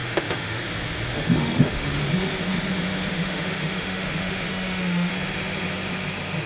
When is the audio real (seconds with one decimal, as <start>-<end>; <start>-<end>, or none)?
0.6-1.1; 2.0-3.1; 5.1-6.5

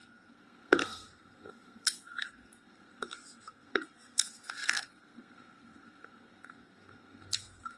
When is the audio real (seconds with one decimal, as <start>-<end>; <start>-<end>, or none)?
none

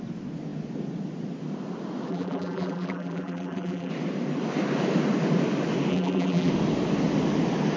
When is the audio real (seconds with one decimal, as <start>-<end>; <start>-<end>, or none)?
0.0-2.1; 3.9-5.9; 6.5-7.8

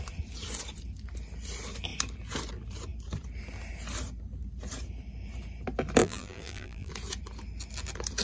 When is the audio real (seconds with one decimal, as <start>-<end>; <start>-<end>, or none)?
0.0-6.0; 6.9-8.2